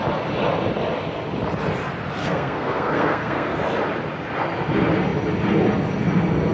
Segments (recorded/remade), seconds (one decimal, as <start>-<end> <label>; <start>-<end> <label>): 0.0-2.2 recorded; 2.2-3.6 remade; 3.6-6.5 recorded